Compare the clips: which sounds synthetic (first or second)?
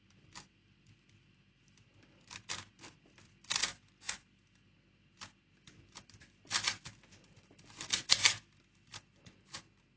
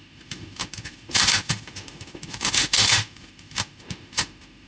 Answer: second